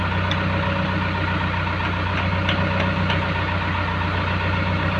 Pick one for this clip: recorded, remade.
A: recorded